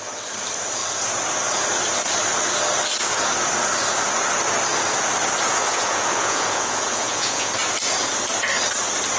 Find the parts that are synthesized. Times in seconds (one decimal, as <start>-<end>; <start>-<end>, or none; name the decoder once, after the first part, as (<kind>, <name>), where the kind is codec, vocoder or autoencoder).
5.7-7.5 (vocoder, Vocos)